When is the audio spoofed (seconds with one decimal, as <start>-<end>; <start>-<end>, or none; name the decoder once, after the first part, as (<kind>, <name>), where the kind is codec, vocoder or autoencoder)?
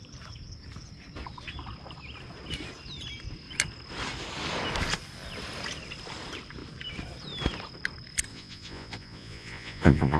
8.3-10.2 (vocoder, Vocos)